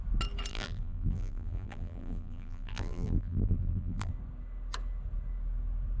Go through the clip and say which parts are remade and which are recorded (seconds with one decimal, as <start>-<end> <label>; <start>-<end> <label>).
0.0-0.5 recorded; 0.5-4.1 remade; 4.1-6.0 recorded